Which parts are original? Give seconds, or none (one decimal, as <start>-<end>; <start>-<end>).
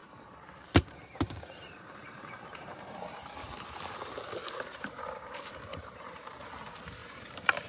3.8-4.4; 6.5-7.0